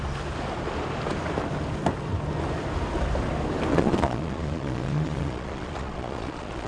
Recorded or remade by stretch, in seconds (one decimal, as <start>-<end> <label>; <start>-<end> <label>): 0.0-3.7 recorded; 3.7-6.7 remade